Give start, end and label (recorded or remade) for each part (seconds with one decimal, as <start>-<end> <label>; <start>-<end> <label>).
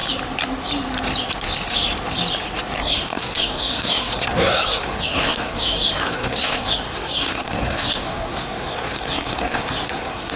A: 0.0-2.8 recorded; 2.8-10.4 remade